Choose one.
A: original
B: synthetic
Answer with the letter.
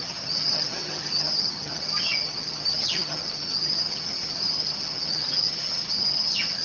B